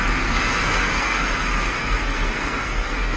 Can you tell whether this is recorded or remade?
remade